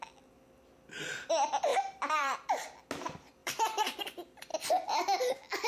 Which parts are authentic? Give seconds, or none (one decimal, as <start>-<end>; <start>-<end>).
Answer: 0.0-1.7; 2.5-3.4; 4.0-4.5; 5.3-5.7